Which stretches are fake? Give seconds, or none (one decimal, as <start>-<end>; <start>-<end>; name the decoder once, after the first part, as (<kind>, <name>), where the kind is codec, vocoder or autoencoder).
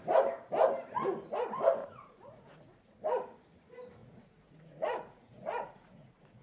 1.8-3.0 (vocoder, Vocos); 4.0-6.4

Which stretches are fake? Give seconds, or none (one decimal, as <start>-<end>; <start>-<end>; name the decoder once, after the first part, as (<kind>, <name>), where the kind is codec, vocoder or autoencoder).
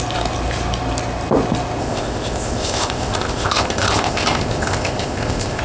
1.8-5.6 (codec, ZipCodec)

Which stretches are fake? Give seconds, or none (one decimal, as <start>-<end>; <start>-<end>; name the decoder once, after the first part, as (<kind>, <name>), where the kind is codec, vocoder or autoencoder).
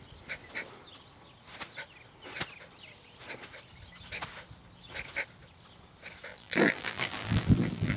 6.3-8.0 (vocoder, BigVGAN v2)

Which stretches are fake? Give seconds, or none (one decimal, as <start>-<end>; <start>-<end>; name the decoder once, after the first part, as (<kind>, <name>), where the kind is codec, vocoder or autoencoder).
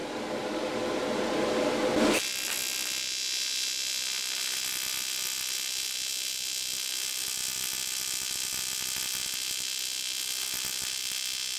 none